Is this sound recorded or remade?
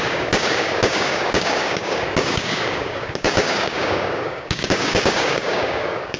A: remade